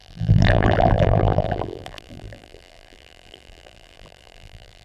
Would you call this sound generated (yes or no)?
yes